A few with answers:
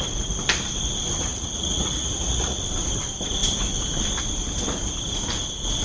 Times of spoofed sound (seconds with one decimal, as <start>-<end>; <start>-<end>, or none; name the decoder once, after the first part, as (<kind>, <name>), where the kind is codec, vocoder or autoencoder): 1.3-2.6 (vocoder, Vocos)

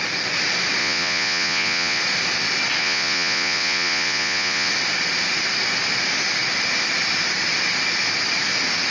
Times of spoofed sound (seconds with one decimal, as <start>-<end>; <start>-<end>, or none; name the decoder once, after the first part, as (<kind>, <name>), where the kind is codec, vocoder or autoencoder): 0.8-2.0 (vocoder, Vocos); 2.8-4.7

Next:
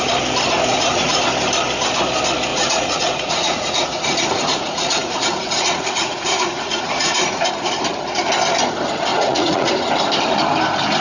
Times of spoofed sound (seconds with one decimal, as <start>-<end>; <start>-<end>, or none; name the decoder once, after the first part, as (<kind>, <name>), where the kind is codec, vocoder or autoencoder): 0.7-1.2 (vocoder, Vocos); 2.5-7.5; 9.1-9.7

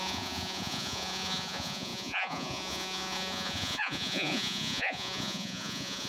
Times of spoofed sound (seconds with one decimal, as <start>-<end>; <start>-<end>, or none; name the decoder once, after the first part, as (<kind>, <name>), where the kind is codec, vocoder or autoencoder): 0.0-6.1 (vocoder, Vocos)

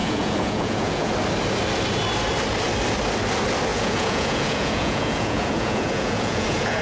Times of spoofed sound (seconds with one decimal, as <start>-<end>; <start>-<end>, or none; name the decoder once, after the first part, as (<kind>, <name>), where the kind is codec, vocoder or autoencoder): 0.0-1.1 (vocoder, Vocos); 3.7-6.8

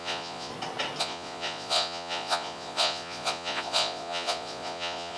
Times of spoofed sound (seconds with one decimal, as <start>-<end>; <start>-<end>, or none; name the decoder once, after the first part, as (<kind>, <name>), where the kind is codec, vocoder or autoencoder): 0.0-0.5 (vocoder, Vocos); 1.0-5.2

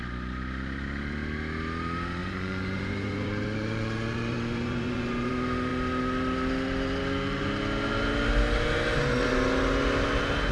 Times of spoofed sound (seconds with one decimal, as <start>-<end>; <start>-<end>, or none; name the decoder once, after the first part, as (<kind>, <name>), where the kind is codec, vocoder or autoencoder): 2.2-5.3 (vocoder, Vocos)

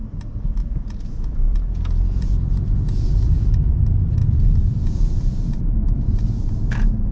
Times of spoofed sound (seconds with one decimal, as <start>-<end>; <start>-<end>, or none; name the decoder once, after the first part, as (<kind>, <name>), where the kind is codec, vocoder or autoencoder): 0.6-3.7 (vocoder, Vocos); 4.2-6.4